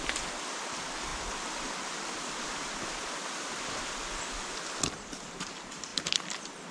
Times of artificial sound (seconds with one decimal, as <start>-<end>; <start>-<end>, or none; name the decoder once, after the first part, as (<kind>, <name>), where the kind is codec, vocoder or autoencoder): 0.0-1.1 (vocoder, BigVGAN v2); 1.8-6.7